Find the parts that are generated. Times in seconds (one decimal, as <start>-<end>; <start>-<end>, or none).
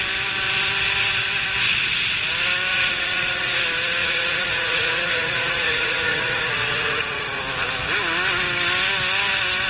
2.7-3.6; 4.0-7.4